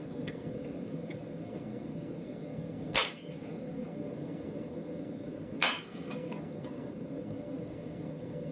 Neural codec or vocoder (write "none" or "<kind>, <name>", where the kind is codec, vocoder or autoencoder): codec, SNAC